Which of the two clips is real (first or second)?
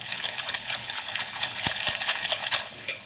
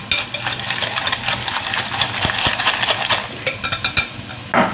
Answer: second